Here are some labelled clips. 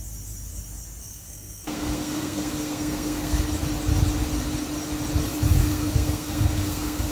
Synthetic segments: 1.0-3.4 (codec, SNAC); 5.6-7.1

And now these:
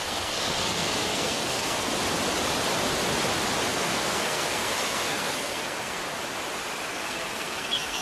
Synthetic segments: 0.0-1.9 (codec, SNAC); 3.7-6.0; 6.9-8.0

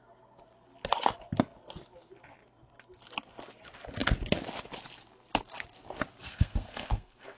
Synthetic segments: 6.2-7.4 (codec, SNAC)

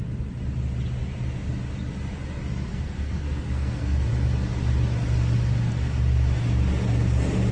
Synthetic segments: 2.7-4.1 (codec, SNAC)

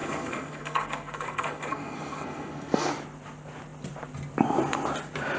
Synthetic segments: 0.0-2.9 (codec, SNAC)